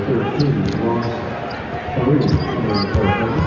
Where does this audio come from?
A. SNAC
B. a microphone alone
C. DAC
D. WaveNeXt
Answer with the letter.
B